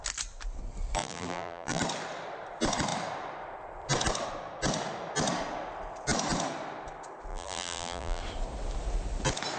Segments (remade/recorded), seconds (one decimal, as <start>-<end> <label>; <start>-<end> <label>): 0.0-1.0 recorded; 1.0-1.8 remade; 1.8-7.3 recorded; 7.3-8.2 remade; 8.2-9.6 recorded